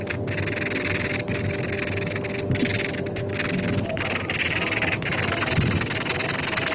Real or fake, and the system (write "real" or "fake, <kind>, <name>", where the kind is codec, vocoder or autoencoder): real